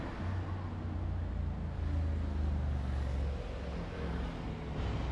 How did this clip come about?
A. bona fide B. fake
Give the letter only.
A